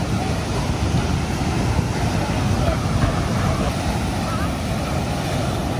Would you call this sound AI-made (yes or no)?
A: no